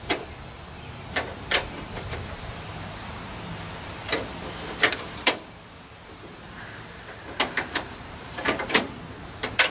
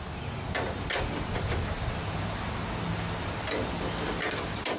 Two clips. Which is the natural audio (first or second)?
second